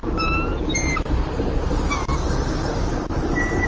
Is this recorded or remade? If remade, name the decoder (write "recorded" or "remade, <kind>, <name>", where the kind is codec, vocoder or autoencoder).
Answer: recorded